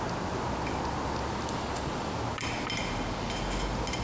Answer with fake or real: real